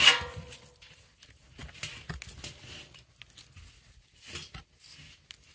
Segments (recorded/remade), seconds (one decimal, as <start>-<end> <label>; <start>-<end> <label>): 0.0-5.5 recorded